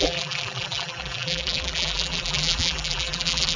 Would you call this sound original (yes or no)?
no